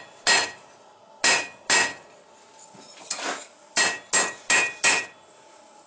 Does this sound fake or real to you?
real